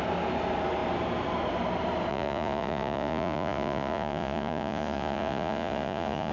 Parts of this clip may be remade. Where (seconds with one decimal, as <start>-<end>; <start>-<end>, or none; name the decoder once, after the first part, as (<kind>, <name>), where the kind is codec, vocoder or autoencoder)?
2.1-6.3 (vocoder, Vocos)